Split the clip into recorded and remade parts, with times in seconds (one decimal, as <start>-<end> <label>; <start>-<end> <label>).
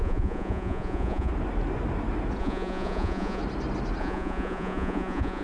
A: 0.0-1.3 remade; 1.3-2.4 recorded; 2.4-3.4 remade; 3.4-4.0 recorded; 4.0-5.4 remade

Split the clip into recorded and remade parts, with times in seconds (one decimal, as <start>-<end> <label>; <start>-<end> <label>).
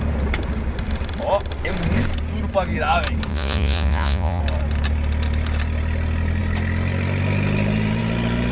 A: 0.0-3.3 recorded; 3.3-4.4 remade; 4.4-8.5 recorded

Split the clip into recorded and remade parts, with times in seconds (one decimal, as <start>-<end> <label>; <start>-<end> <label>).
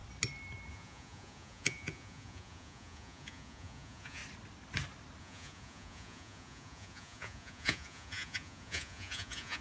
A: 0.0-0.7 recorded; 0.7-4.2 remade; 4.2-5.2 recorded; 5.2-9.6 remade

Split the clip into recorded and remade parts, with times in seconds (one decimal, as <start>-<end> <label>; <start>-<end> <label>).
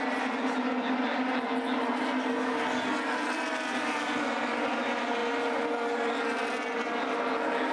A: 0.0-7.7 recorded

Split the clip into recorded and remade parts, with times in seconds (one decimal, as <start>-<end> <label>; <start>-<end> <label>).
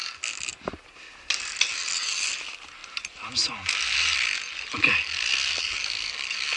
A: 0.0-6.6 recorded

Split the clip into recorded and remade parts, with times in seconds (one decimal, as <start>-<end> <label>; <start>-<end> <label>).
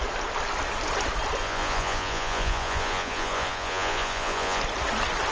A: 0.0-1.4 recorded; 1.4-4.6 remade; 4.6-5.3 recorded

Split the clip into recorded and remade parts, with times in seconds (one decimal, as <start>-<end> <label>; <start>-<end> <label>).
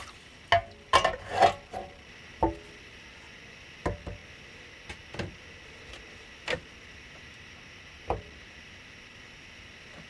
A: 0.0-3.1 recorded; 3.1-3.7 remade; 3.7-10.1 recorded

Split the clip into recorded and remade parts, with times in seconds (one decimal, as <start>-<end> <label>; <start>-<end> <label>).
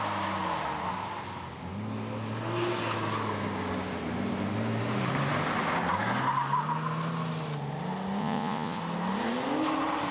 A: 0.0-8.2 recorded; 8.2-8.8 remade; 8.8-10.1 recorded